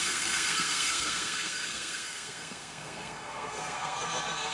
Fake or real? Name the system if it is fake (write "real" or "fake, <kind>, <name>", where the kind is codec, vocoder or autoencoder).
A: fake, codec, SNAC